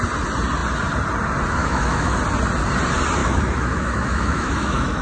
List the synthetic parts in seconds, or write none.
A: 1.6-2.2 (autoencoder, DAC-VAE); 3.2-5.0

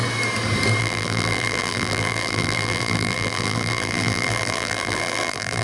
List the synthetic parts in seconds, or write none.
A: 0.8-5.6 (vocoder, BigVGAN v2)

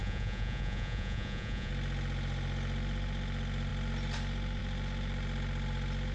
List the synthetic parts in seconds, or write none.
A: 0.0-1.7 (vocoder, Vocos)

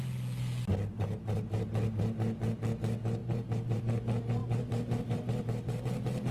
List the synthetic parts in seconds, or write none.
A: 0.9-2.0 (vocoder, BigVGAN v2); 3.2-3.8; 4.4-5.8

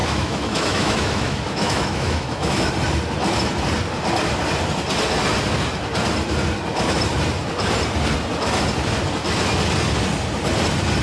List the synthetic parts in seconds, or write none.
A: 0.0-2.7 (autoencoder, DAC-VAE)

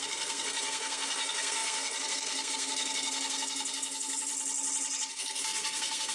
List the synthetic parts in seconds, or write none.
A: 0.0-4.3 (codec, SNAC); 5.1-6.1

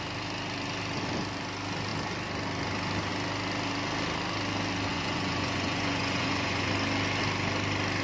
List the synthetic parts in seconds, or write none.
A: 4.9-6.7 (vocoder, Vocos)